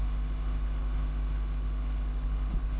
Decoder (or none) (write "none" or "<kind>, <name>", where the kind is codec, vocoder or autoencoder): codec, HILCodec